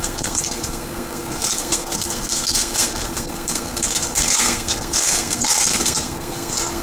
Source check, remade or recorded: remade